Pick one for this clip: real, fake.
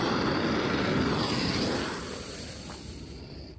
real